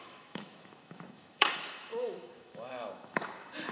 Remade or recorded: remade